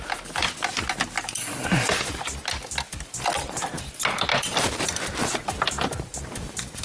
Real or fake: real